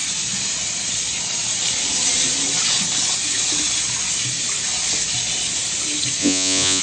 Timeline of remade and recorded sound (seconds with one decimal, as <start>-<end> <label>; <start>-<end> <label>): 0.0-6.2 recorded; 6.2-6.8 remade